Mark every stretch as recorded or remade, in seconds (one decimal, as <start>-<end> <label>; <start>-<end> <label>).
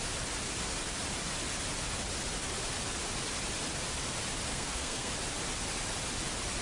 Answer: 0.0-4.5 recorded; 4.5-5.1 remade; 5.1-6.6 recorded